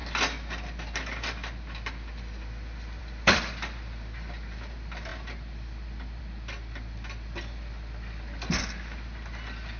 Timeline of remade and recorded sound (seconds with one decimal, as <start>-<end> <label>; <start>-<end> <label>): 0.0-9.8 recorded